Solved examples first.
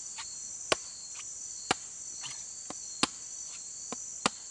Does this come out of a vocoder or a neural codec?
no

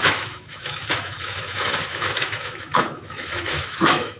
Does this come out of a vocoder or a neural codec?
yes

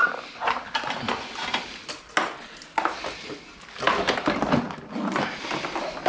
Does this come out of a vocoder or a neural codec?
no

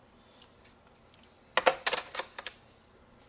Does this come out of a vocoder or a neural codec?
no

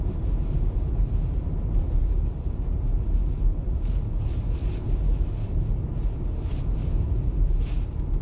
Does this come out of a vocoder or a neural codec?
no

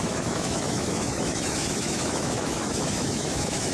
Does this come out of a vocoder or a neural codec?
yes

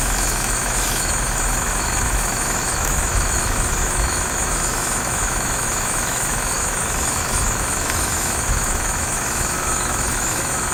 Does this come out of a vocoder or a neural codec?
yes